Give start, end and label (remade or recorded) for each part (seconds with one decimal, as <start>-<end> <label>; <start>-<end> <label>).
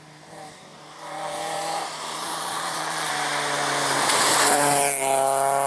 0.0-2.2 recorded; 2.2-3.1 remade; 3.1-5.7 recorded